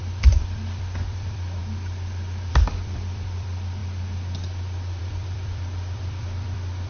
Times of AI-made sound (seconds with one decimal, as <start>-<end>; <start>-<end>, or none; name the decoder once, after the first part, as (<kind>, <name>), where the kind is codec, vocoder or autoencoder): 0.0-1.6 (vocoder, BigVGAN v2); 2.5-3.8; 5.0-6.9